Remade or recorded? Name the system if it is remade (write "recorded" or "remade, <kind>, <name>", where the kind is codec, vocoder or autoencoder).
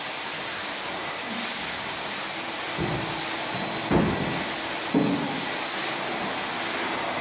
recorded